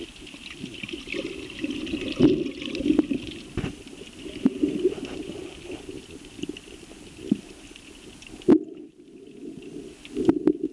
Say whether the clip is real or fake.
real